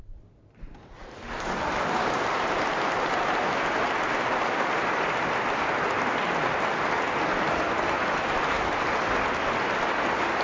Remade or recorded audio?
recorded